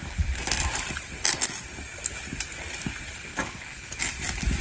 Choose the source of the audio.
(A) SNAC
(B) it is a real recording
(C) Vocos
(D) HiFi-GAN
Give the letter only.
B